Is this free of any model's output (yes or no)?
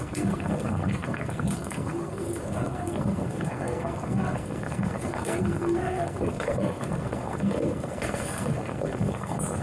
no